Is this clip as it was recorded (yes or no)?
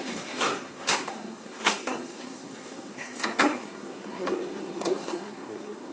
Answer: no